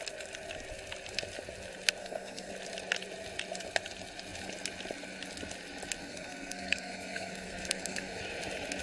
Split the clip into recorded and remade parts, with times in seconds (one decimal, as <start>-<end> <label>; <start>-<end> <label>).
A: 0.0-2.0 recorded; 2.0-2.5 remade; 2.5-6.0 recorded; 6.0-8.2 remade; 8.2-8.8 recorded